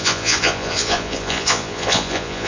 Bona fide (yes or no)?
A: no